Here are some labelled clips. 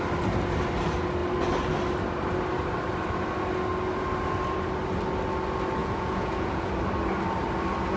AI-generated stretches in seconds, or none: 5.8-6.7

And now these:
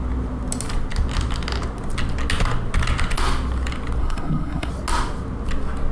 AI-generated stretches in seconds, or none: 4.0-4.7

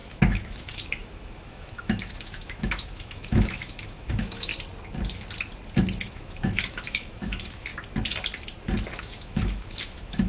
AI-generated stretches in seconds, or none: 0.0-4.5; 6.1-7.7; 9.0-10.3